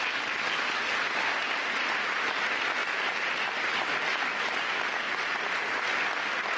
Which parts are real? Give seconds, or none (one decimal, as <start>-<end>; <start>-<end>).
0.0-1.4; 2.2-2.8; 3.7-6.6